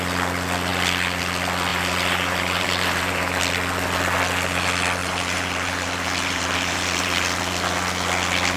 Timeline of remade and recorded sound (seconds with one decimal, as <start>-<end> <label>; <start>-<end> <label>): 0.0-1.7 recorded; 1.7-3.4 remade; 3.4-5.0 recorded; 5.0-7.4 remade; 7.4-8.6 recorded